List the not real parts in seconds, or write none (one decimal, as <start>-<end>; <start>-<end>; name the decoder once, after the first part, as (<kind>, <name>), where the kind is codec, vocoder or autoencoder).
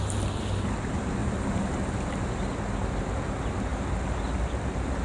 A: 1.2-2.3 (vocoder, BigVGAN v2)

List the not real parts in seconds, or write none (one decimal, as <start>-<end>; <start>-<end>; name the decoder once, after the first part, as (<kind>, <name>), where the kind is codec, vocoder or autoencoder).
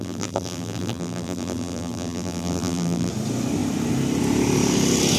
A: 0.0-3.1 (vocoder, BigVGAN v2)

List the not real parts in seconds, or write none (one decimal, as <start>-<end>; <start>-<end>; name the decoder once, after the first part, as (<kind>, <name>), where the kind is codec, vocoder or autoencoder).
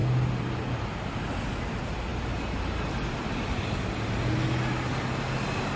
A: none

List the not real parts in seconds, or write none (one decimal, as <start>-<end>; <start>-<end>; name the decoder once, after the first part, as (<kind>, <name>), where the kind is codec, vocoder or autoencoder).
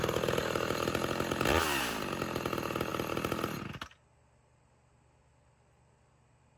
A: 0.4-1.8 (vocoder, BigVGAN v2); 2.9-3.6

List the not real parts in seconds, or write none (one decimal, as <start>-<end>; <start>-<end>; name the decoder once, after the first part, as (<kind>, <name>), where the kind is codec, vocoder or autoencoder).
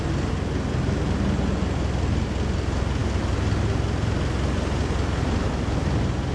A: none